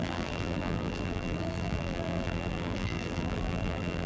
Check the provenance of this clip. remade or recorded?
remade